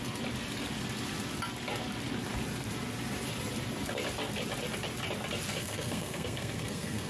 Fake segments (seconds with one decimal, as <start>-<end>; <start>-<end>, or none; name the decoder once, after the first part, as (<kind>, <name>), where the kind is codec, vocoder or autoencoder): 5.5-7.1 (codec, SNAC)